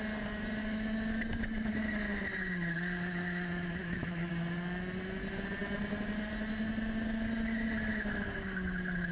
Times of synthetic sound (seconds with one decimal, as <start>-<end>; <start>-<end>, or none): 0.6-4.3; 7.9-9.1